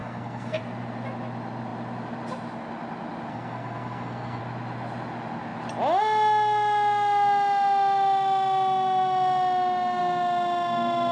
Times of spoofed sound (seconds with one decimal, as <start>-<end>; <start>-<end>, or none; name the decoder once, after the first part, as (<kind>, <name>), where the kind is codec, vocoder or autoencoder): 0.0-0.6 (codec, SNAC); 3.3-4.4